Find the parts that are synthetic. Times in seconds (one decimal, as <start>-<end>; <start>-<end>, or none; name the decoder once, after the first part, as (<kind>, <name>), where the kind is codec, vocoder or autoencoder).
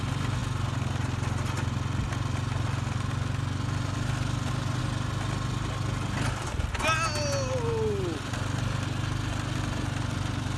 none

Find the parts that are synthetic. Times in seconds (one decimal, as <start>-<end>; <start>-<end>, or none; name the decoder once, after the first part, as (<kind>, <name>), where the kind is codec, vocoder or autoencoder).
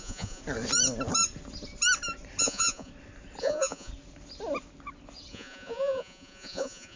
0.0-0.4 (vocoder, Vocos); 2.4-2.9; 3.4-3.9; 5.3-7.0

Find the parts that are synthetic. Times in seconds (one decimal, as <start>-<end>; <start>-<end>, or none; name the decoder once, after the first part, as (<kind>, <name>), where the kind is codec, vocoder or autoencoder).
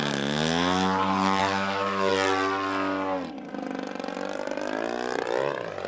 1.4-2.1 (autoencoder, DAC-VAE)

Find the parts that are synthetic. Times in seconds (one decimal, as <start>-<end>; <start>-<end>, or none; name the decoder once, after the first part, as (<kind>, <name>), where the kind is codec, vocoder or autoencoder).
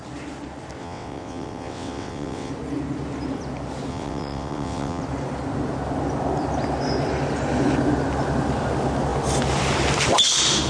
0.8-2.5 (vocoder, WaveNeXt); 3.9-5.0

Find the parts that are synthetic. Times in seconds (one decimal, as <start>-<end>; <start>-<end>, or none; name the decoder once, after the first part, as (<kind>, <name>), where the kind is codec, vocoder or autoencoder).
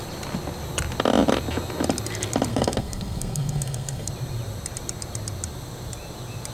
2.5-4.1 (codec, SNAC)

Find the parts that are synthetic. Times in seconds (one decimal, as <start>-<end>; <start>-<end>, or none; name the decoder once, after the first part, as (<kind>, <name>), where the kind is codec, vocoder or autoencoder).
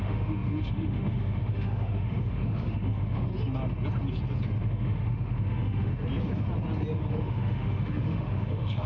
0.0-3.3 (autoencoder, DAC-VAE); 4.6-5.9; 7.1-8.9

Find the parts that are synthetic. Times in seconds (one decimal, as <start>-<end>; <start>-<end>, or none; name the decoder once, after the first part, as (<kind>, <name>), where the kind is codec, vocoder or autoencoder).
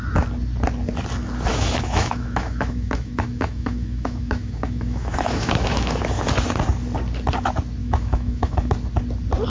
1.5-6.0 (autoencoder, DAC-VAE); 7.8-8.7